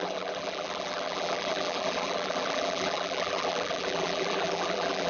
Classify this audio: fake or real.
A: fake